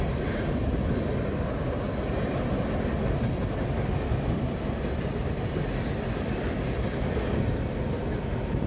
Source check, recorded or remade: recorded